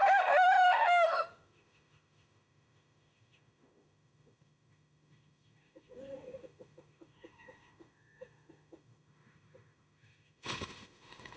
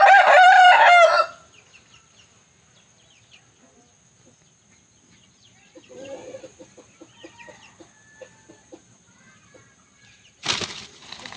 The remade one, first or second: first